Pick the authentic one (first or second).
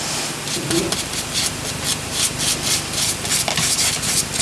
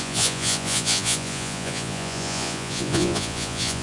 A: first